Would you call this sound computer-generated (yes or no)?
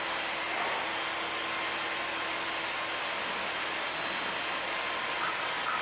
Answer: no